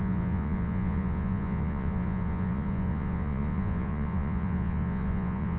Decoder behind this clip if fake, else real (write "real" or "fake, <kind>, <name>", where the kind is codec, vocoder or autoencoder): fake, vocoder, Vocos